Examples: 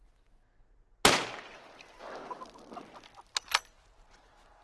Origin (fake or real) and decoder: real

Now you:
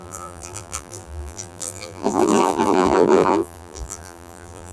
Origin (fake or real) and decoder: fake, vocoder, BigVGAN v2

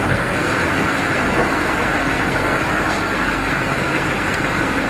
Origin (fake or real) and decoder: fake, codec, SNAC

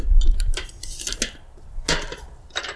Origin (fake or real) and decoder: real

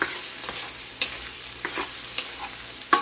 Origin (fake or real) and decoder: fake, vocoder, BigVGAN v2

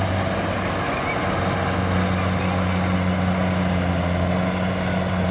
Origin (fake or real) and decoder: real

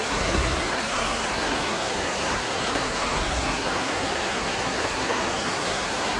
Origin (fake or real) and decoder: fake, codec, SNAC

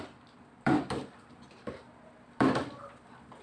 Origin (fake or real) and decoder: fake, vocoder, BigVGAN v2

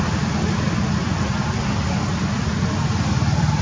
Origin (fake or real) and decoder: real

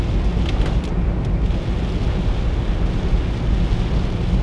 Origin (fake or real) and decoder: real